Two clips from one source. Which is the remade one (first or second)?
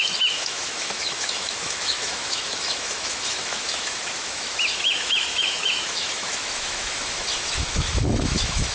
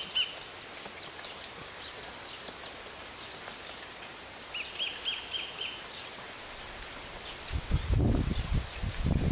first